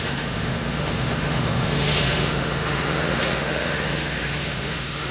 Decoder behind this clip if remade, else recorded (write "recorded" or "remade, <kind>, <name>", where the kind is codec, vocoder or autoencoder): remade, autoencoder, DAC-VAE